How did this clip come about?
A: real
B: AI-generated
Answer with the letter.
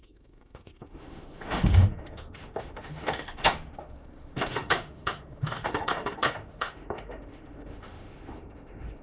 B